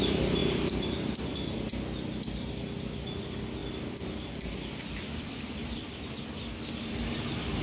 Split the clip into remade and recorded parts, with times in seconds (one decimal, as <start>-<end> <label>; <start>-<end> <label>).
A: 0.0-7.6 recorded